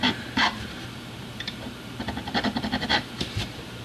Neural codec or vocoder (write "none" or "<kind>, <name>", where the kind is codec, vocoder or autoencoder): vocoder, BigVGAN v2